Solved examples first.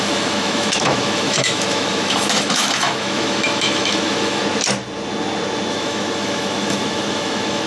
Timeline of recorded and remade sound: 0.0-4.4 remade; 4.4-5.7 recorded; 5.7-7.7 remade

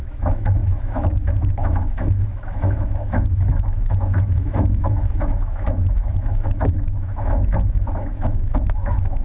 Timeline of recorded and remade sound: 0.0-9.2 remade

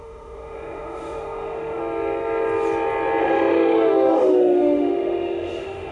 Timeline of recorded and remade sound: 0.0-1.8 remade; 1.8-3.2 recorded; 3.2-5.9 remade